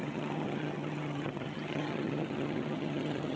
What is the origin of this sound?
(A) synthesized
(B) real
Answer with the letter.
A